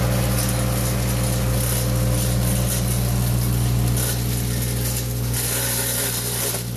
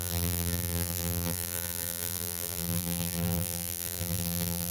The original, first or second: first